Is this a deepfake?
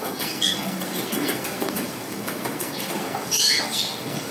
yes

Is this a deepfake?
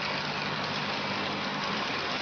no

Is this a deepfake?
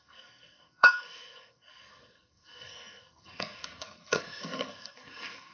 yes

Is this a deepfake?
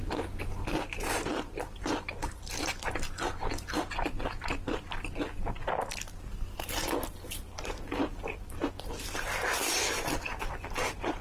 no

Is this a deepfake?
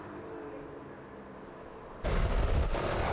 no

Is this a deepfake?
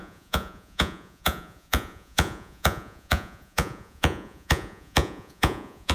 yes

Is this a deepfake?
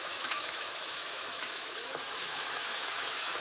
yes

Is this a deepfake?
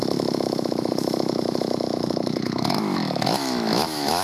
yes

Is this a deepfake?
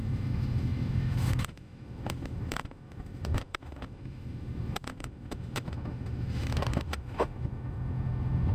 yes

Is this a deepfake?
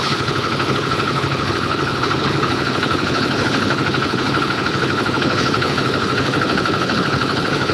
yes